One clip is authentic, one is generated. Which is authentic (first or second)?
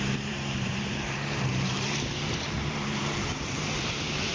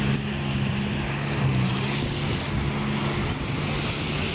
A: second